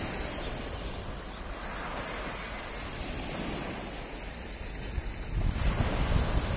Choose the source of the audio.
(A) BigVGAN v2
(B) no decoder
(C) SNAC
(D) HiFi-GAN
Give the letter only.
B